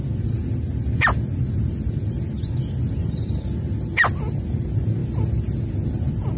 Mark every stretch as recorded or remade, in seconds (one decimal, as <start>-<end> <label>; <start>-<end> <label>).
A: 0.0-6.4 recorded